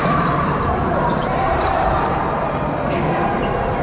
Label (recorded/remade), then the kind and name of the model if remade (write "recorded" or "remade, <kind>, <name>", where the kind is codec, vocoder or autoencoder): remade, vocoder, BigVGAN v2